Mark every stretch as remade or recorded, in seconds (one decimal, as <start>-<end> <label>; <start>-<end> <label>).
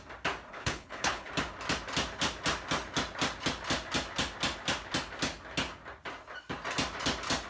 0.0-0.5 recorded; 0.5-1.3 remade; 1.3-7.5 recorded